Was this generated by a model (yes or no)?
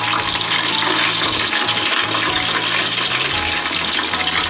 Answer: no